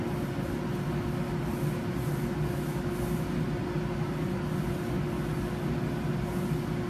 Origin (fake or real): real